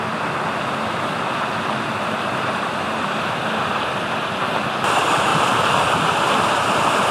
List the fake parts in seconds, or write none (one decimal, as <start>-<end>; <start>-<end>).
none

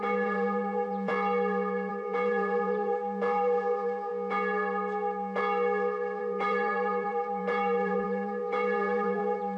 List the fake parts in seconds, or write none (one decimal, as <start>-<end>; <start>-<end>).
0.0-1.1; 1.9-4.1; 6.2-9.6

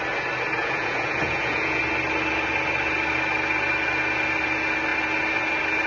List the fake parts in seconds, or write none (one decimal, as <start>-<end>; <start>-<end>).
0.6-1.8

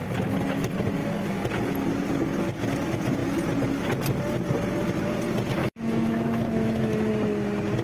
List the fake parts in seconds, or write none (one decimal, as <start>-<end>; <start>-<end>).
5.6-7.1